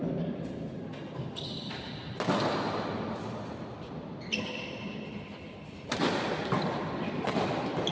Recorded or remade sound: recorded